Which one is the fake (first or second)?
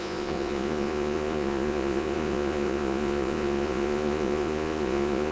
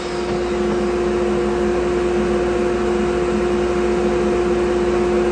first